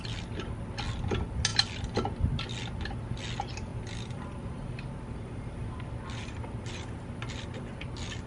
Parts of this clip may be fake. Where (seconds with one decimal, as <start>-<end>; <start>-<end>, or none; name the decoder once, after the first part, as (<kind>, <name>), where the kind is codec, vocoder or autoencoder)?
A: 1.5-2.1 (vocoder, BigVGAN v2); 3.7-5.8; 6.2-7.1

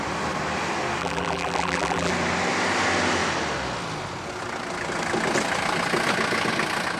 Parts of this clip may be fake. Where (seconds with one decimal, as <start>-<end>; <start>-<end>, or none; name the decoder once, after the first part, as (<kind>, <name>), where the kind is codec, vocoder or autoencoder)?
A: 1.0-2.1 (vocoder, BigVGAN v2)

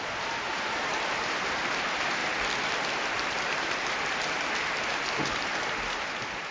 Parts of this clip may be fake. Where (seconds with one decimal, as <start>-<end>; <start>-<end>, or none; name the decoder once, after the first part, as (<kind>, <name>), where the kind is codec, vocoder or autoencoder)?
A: 0.0-2.2 (vocoder, BigVGAN v2); 4.9-6.5